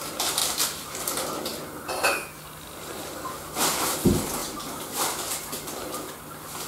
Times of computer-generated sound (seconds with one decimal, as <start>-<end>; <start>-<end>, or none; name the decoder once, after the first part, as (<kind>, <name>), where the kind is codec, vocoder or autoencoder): none